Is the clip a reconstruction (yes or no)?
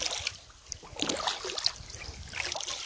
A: no